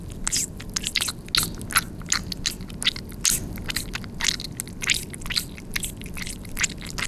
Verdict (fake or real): real